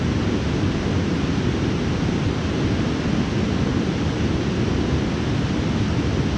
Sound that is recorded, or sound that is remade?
recorded